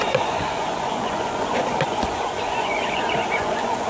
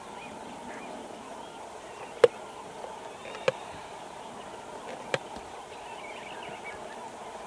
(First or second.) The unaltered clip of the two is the second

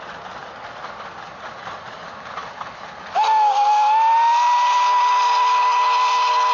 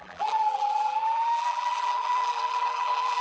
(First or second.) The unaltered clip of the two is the first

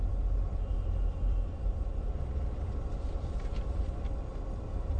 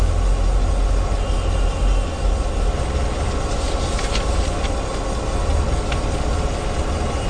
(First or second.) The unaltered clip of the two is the second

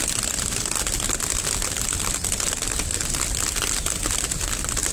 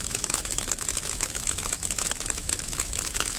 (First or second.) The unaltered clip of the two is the first